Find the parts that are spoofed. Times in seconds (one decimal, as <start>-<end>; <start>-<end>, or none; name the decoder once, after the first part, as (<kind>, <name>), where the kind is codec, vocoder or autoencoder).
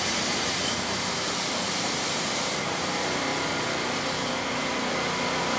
0.0-3.3 (vocoder, BigVGAN v2); 4.6-5.6